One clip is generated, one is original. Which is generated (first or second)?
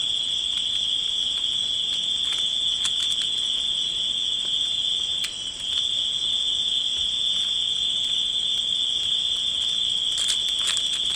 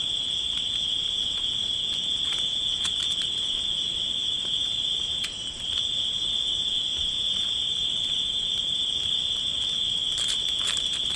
second